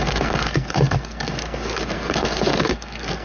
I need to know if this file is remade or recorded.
remade